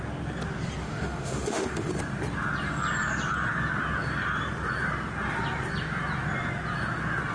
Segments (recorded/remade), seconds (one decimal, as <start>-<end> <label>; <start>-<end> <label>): 0.0-0.8 recorded; 0.8-1.9 remade; 1.9-7.3 recorded